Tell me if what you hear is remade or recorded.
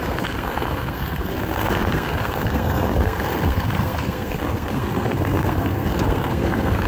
remade